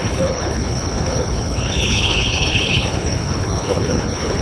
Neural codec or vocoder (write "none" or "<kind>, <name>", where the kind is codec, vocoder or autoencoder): codec, HILCodec